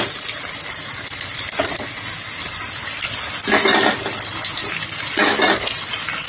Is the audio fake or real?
real